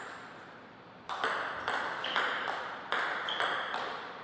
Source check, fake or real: real